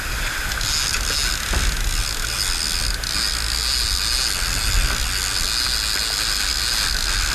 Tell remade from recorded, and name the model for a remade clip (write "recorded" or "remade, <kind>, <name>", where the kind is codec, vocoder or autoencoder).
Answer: recorded